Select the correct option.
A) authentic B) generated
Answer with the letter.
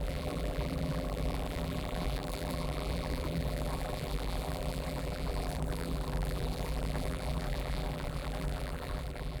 B